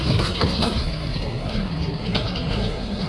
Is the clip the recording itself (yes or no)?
no